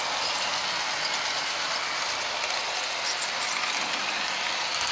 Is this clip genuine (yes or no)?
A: yes